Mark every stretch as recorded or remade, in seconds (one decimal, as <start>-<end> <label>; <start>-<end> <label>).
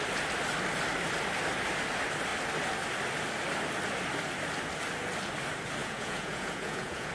0.0-5.8 recorded; 5.8-7.1 remade